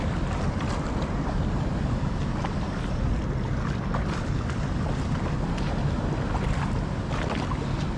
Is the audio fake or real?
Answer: real